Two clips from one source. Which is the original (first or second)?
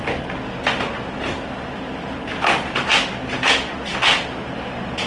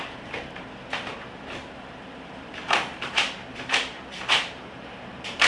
first